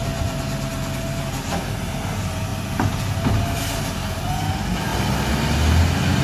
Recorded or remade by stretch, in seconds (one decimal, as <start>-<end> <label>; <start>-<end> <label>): 0.0-0.7 remade; 0.7-2.5 recorded; 2.5-3.1 remade; 3.1-6.2 recorded